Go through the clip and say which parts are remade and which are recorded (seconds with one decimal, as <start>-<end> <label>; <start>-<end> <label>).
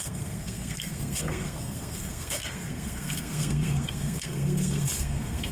0.0-5.5 remade